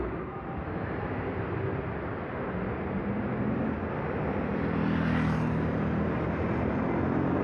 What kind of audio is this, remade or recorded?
recorded